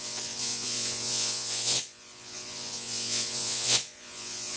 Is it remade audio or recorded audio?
remade